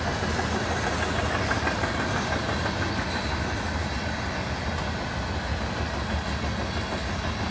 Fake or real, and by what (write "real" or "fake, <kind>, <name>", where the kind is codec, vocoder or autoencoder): real